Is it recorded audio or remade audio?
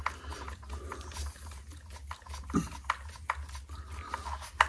recorded